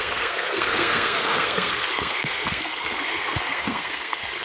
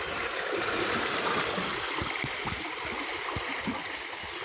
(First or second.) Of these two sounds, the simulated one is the first